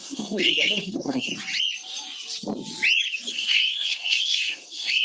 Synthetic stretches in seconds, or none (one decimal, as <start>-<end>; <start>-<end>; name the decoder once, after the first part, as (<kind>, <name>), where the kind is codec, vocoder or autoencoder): 0.0-1.3 (codec, SNAC); 3.3-5.0